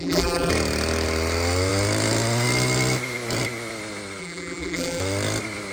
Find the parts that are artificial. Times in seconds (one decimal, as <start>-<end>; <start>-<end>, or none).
0.0-0.5; 4.2-5.0